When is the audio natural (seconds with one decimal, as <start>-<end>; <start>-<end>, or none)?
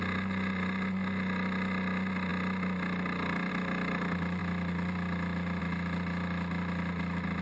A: 0.0-7.4